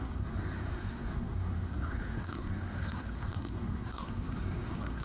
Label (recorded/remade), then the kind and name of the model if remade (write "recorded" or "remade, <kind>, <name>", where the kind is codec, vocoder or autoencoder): remade, codec, SNAC